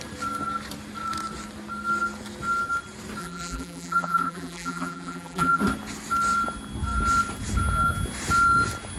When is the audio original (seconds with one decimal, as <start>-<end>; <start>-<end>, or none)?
0.0-3.2; 5.6-9.0

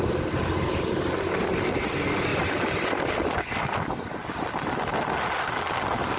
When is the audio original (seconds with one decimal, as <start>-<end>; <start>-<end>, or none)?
0.0-6.2

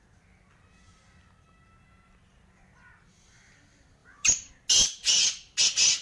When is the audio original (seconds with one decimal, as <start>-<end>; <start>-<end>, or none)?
0.0-4.0; 4.5-6.0

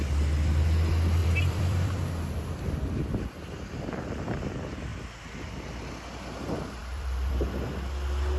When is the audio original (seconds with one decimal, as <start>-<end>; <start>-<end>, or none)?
0.0-1.2; 3.2-6.8; 7.3-8.4

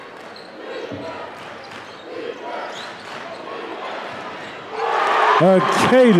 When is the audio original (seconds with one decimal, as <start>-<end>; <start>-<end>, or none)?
0.0-6.2

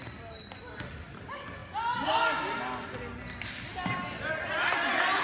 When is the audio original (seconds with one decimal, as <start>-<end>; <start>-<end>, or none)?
0.0-5.2

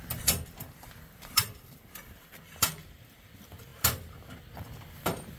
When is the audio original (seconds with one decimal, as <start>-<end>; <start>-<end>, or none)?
3.7-5.0

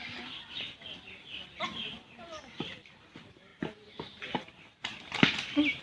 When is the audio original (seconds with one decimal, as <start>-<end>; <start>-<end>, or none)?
none